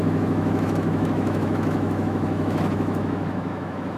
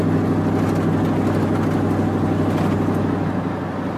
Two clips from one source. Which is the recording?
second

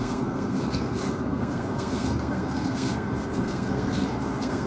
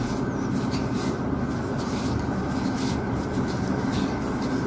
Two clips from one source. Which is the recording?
second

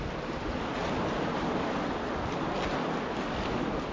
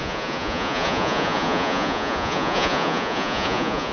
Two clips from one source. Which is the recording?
first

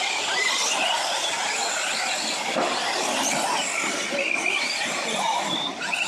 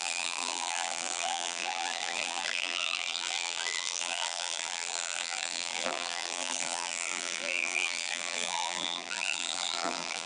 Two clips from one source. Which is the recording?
first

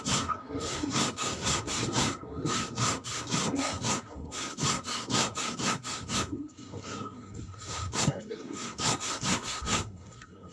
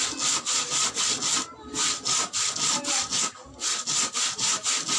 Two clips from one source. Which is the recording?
second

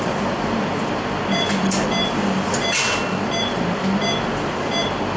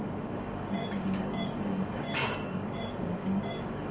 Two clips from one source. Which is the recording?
first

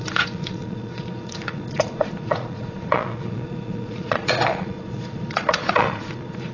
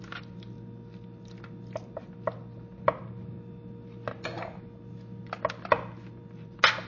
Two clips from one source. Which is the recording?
second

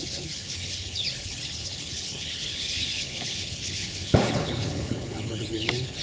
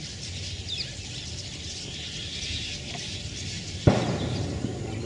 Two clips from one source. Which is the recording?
second